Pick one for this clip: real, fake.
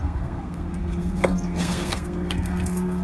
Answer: fake